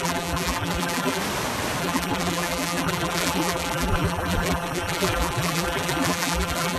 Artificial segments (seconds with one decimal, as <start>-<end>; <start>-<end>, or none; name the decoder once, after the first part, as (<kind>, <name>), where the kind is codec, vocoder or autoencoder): 0.0-1.2 (vocoder, BigVGAN v2); 1.8-6.8